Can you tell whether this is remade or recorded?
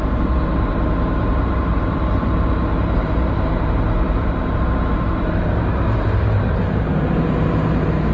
remade